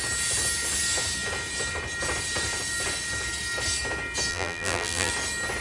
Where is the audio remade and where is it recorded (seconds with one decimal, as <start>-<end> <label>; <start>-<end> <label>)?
0.0-4.3 recorded; 4.3-5.1 remade; 5.1-5.6 recorded